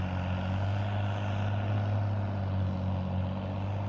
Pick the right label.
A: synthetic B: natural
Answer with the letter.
B